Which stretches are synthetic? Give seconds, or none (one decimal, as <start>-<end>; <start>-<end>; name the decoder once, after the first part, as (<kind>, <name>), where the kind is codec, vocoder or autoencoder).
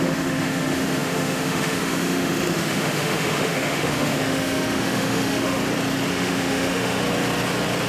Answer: 0.0-5.6 (autoencoder, DAC-VAE); 6.1-7.0